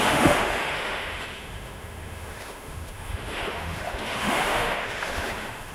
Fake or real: fake